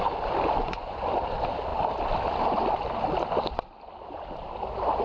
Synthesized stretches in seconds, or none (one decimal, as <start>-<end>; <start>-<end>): 0.6-1.2